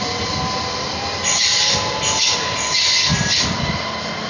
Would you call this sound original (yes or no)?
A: yes